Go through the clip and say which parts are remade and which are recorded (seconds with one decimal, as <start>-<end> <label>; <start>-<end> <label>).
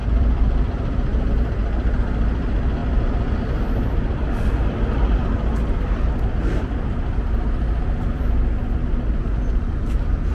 0.0-1.3 remade; 1.3-10.3 recorded